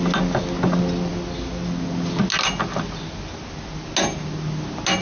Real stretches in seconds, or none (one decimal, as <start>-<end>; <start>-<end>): 0.0-5.0